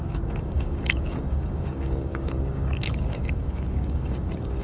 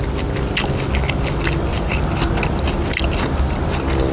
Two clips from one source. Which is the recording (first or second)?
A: second